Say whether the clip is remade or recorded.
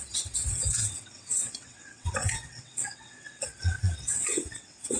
remade